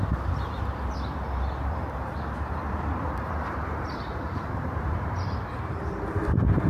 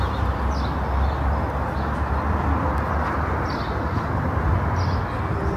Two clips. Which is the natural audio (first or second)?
second